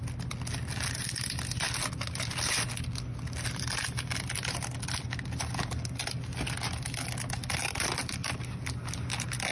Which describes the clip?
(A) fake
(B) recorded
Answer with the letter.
B